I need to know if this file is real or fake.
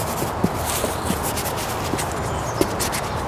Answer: real